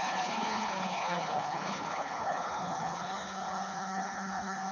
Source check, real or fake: fake